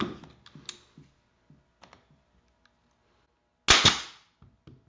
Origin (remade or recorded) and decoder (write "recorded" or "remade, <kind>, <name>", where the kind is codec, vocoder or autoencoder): recorded